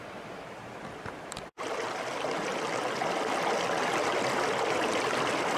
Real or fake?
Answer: real